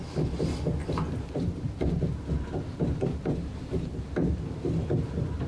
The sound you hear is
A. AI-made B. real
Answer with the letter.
B